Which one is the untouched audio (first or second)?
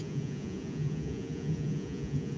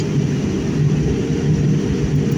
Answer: second